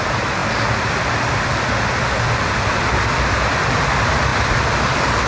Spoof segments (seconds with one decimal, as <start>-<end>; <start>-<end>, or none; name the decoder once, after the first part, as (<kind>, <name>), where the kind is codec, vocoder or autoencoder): none